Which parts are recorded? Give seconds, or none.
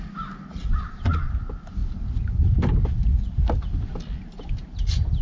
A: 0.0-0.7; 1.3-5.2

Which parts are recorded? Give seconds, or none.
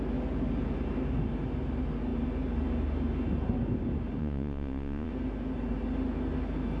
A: 0.0-4.2; 5.1-6.8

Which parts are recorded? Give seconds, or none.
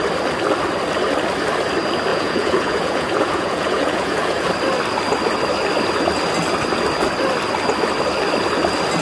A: 0.0-2.1; 4.5-9.0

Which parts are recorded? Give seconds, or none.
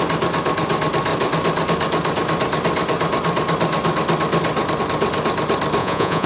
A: 0.0-5.8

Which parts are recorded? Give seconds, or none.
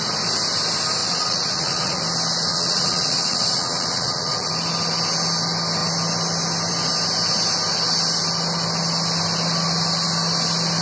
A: 0.0-1.0; 2.0-2.5; 4.5-10.8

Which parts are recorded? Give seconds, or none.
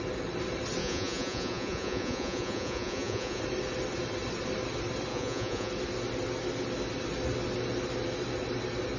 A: 0.0-0.8; 3.4-5.1; 5.7-9.0